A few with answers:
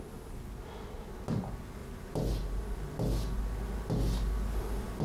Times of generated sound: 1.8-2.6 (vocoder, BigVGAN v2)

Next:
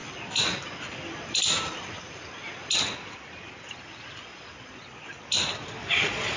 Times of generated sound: 3.8-5.2 (vocoder, Vocos); 5.9-6.4

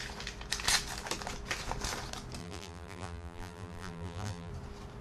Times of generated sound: 2.4-4.5 (vocoder, BigVGAN v2)

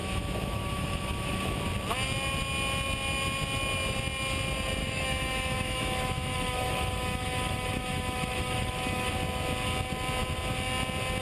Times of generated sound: 0.0-1.6 (autoencoder, DAC-VAE); 4.8-9.1